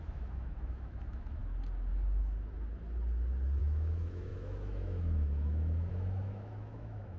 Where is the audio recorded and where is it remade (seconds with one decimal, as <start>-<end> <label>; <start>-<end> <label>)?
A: 0.0-1.4 remade; 1.4-3.6 recorded; 3.6-7.2 remade

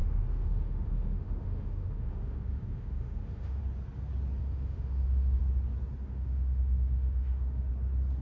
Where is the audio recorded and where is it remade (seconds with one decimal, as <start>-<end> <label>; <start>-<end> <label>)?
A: 0.0-3.6 remade; 3.6-4.4 recorded; 4.4-5.4 remade; 5.4-6.0 recorded; 6.0-7.7 remade; 7.7-8.2 recorded

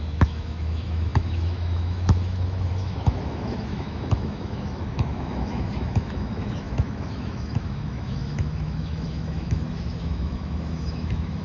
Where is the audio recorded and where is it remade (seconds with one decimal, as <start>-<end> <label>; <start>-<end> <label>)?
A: 0.0-11.4 remade

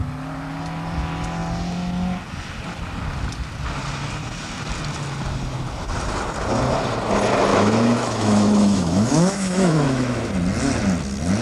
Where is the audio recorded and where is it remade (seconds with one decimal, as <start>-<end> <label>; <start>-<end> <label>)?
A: 0.0-7.5 recorded; 7.5-10.3 remade; 10.3-11.4 recorded